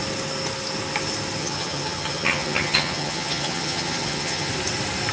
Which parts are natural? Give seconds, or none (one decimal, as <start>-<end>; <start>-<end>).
0.0-1.4; 4.5-5.1